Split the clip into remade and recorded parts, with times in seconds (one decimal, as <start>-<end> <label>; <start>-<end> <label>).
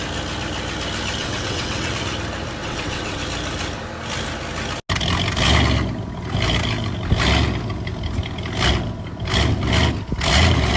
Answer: 0.0-1.2 recorded; 1.2-1.9 remade; 1.9-2.6 recorded; 2.6-3.2 remade; 3.2-10.8 recorded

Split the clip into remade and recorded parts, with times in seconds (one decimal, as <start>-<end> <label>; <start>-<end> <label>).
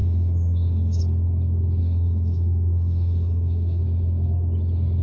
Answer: 0.0-1.0 remade; 1.0-1.8 recorded; 1.8-3.8 remade; 3.8-5.0 recorded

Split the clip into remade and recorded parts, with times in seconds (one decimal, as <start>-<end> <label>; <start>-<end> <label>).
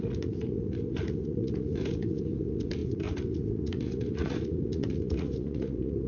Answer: 0.0-6.1 remade